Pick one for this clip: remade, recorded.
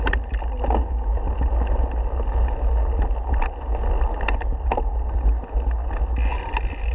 recorded